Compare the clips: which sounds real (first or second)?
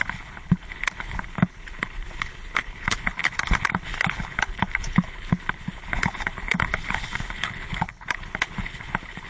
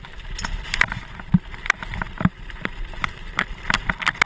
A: second